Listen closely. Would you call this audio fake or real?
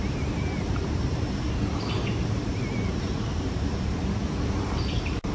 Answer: fake